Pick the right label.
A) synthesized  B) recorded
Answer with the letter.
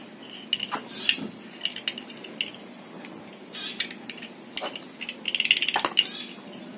B